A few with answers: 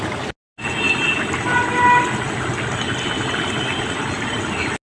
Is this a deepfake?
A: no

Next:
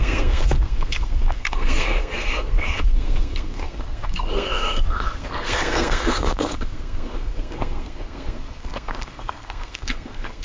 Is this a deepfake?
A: yes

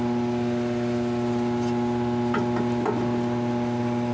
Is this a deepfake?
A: no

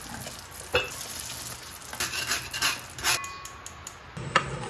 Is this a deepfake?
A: no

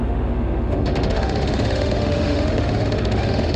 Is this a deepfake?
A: yes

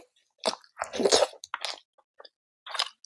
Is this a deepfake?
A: no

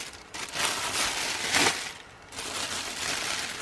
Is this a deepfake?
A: no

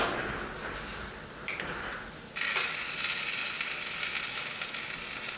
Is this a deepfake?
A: no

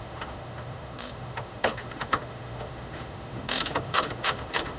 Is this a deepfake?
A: yes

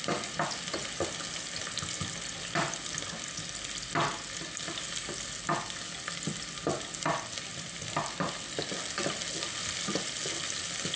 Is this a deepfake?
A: no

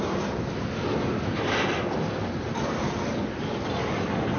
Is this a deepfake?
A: no